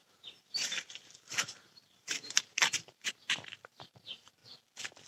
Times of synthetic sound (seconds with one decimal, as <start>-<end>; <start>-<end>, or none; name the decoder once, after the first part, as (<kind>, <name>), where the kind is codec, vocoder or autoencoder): 0.0-4.4 (vocoder, BigVGAN v2)